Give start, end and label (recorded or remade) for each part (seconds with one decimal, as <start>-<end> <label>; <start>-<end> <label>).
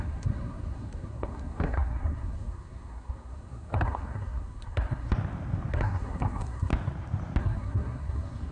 0.0-5.1 remade; 5.1-5.7 recorded; 5.7-6.7 remade; 6.7-7.4 recorded; 7.4-8.5 remade